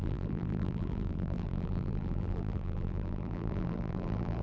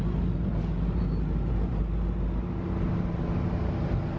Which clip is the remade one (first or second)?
first